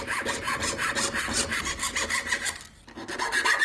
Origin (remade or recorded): recorded